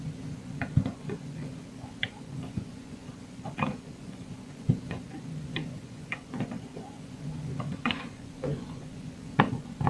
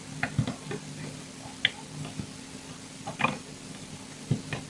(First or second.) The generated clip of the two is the first